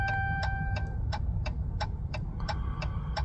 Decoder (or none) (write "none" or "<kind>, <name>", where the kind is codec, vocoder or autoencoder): vocoder, BigVGAN v2